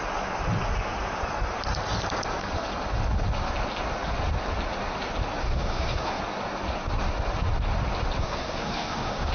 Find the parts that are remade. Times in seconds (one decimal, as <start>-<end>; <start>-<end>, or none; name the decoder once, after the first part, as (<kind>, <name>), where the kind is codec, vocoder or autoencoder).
5.4-6.2 (codec, SNAC); 8.2-9.3